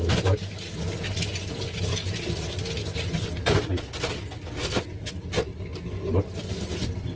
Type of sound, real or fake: real